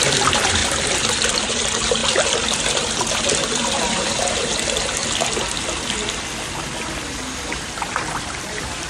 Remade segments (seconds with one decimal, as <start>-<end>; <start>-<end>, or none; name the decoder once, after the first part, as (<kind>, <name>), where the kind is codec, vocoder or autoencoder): 0.0-2.0 (vocoder, BigVGAN v2); 3.1-5.0; 7.8-8.9